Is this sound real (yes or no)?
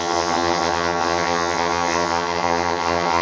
no